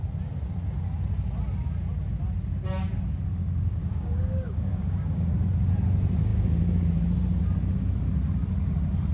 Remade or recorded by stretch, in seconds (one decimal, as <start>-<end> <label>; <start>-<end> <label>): 0.0-3.4 recorded; 3.4-5.3 remade; 5.3-9.1 recorded